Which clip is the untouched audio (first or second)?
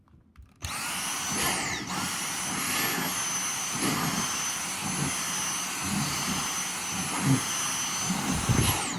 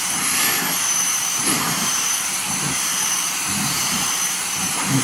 first